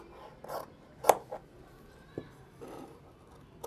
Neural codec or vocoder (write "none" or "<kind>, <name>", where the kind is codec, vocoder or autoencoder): none